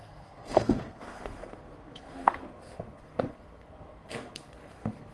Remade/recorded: remade